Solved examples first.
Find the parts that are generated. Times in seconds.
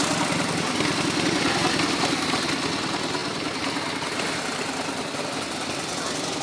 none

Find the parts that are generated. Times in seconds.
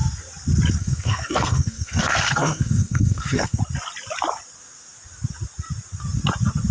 0.8-3.6 (codec, SNAC)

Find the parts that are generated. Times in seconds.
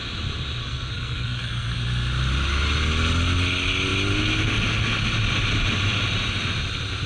0.6-1.8 (codec, SNAC)